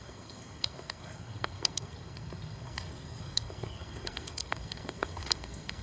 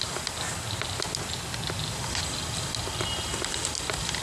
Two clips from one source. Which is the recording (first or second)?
second